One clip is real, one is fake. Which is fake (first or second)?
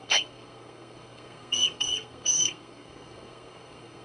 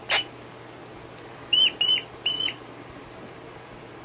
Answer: first